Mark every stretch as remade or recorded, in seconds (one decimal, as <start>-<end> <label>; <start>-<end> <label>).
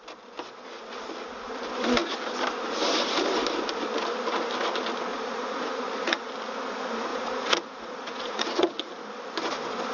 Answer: 0.0-5.1 recorded; 5.1-6.3 remade; 6.3-7.1 recorded; 7.1-8.9 remade; 8.9-9.9 recorded